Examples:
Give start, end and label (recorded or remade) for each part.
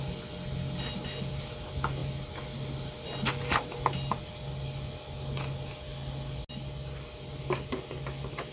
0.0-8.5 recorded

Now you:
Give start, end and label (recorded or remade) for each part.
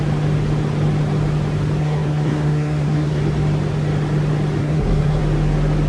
0.0-1.8 recorded; 1.8-3.2 remade; 3.2-4.6 recorded; 4.6-5.2 remade; 5.2-5.9 recorded